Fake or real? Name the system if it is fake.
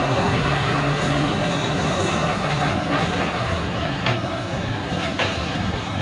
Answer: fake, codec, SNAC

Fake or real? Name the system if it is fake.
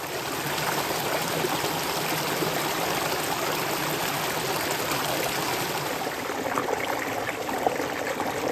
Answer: real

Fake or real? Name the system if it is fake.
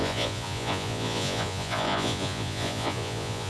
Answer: fake, vocoder, Vocos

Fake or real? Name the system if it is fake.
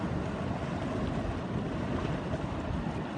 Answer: real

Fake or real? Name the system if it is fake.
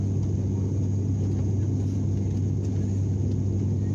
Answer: real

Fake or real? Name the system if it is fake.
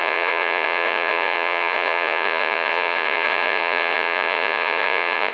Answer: fake, vocoder, Vocos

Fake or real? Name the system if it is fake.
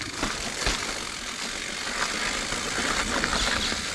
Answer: real